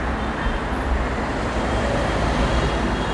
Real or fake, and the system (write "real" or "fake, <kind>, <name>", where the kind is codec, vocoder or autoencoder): real